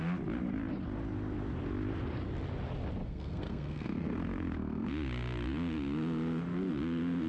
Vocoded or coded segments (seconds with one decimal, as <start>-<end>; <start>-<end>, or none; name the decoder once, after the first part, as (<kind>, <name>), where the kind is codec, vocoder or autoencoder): 3.0-4.9 (codec, SNAC)